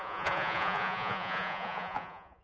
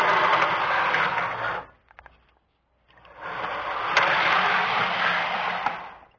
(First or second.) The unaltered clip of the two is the second